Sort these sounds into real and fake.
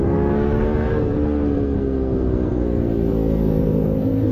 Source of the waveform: fake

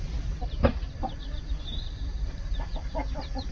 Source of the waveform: fake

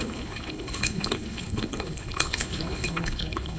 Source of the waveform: fake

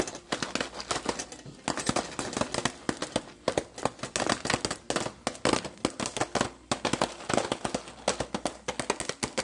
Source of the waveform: real